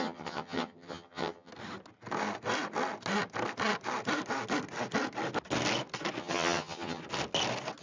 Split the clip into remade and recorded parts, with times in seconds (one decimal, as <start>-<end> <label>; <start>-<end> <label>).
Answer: 0.0-1.5 remade; 1.5-6.2 recorded; 6.2-7.0 remade; 7.0-7.8 recorded